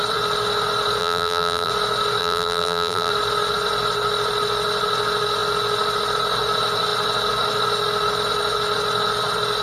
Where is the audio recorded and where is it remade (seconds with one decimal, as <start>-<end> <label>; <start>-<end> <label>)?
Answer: 0.0-1.0 recorded; 1.0-1.7 remade; 1.7-2.2 recorded; 2.2-3.1 remade; 3.1-9.6 recorded